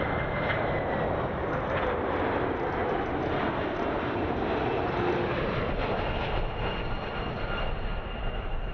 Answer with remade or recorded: recorded